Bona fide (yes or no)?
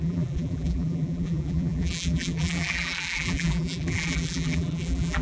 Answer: no